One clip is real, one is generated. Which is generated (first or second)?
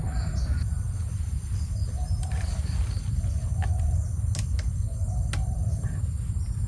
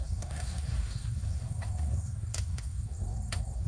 second